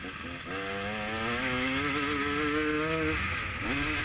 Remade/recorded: recorded